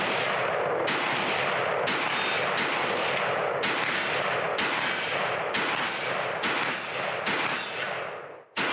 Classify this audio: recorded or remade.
recorded